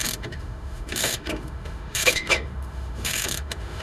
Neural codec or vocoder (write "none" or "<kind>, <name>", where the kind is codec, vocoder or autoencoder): autoencoder, DAC-VAE